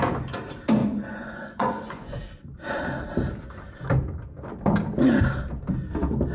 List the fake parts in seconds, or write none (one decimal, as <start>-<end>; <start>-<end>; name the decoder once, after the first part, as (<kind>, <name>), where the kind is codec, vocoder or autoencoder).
0.8-2.2 (vocoder, Vocos)